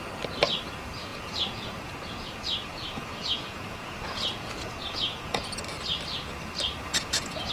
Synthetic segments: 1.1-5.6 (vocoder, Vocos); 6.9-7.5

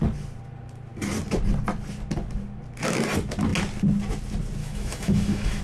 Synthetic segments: 4.6-5.6 (autoencoder, DAC-VAE)

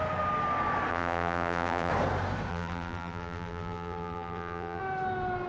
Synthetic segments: 0.9-1.9 (vocoder, BigVGAN v2); 2.5-4.8

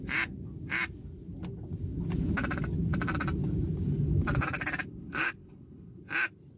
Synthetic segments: 4.9-6.0 (codec, HILCodec)

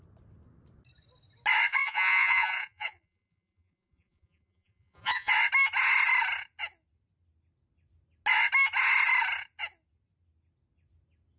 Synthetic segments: 1.7-5.3 (vocoder, Vocos)

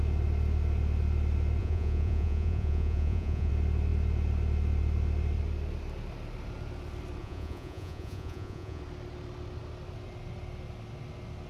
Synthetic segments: 1.6-3.5 (vocoder, Vocos); 7.2-8.8

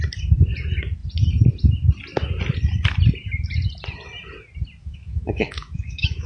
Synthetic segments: 4.8-6.3 (autoencoder, DAC-VAE)